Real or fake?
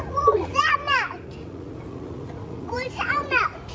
fake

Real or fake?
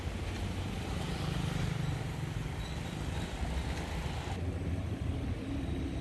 real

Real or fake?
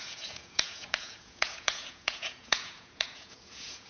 fake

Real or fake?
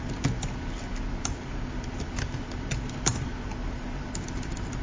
real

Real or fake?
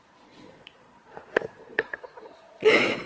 fake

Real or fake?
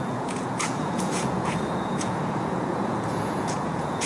fake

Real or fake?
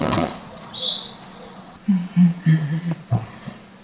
fake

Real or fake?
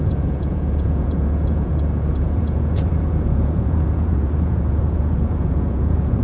fake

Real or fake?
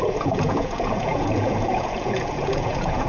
fake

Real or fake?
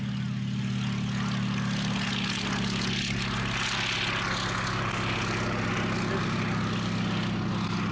real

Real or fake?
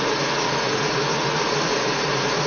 fake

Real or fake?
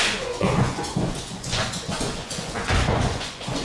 fake